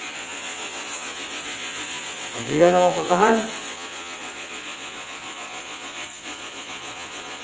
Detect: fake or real fake